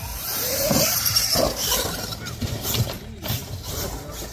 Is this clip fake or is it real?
fake